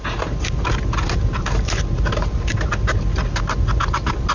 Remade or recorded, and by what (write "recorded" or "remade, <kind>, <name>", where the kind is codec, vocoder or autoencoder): recorded